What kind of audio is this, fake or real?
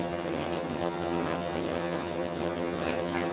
fake